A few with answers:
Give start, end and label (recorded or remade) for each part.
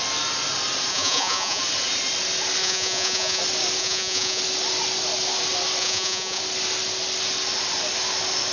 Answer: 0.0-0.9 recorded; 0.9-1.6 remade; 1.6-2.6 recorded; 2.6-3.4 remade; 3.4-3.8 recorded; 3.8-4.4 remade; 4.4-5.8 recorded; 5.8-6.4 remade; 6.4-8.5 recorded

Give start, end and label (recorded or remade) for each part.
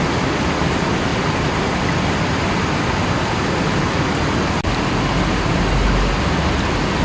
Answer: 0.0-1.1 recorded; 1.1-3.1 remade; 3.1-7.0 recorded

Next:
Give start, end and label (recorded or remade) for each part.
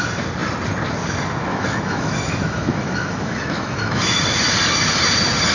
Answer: 0.0-1.5 recorded; 1.5-4.2 remade; 4.2-5.5 recorded